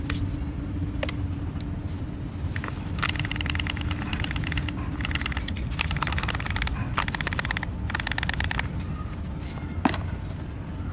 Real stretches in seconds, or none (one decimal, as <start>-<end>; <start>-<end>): 0.0-10.9